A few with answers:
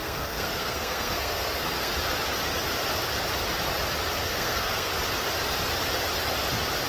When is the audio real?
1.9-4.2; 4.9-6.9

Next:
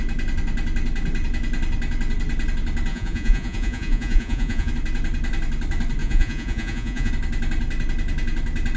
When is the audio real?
0.0-2.9; 4.7-6.0; 7.1-8.8

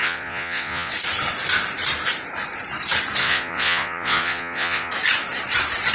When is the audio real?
0.9-3.2; 4.9-5.9

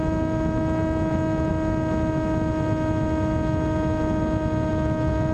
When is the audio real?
1.5-4.7